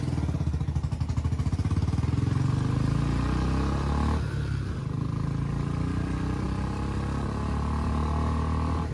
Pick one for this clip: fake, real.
real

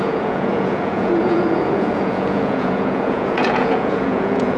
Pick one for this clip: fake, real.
fake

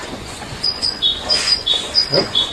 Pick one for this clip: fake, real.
fake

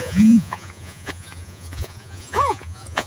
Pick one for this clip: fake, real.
fake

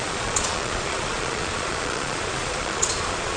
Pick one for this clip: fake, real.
fake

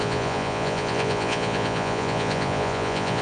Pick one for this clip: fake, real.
fake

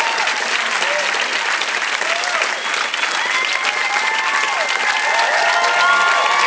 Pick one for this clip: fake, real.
real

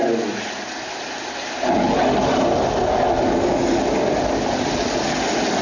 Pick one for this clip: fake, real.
real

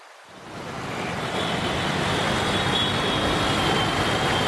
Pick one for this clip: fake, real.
real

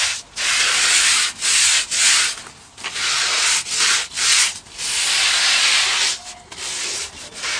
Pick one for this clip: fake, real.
real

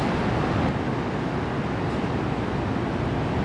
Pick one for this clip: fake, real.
real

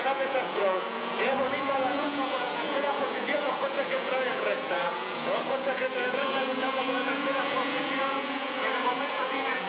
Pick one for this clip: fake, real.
fake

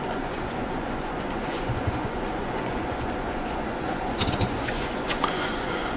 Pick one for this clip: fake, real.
fake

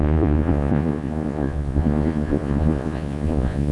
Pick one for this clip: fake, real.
fake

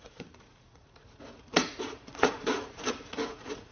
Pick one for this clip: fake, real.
fake